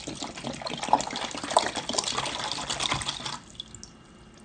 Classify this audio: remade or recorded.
recorded